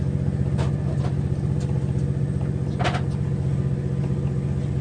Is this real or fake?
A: real